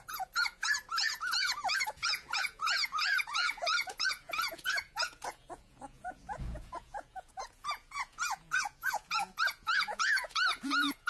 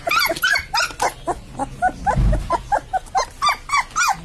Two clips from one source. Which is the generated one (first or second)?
first